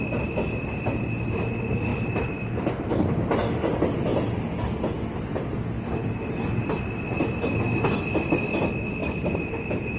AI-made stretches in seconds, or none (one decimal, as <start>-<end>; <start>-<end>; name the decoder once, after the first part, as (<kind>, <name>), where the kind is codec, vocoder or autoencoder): 9.0-10.0 (vocoder, BigVGAN v2)